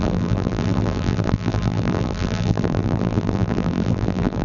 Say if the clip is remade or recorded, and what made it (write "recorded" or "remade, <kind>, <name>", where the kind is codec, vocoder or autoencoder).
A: remade, vocoder, BigVGAN v2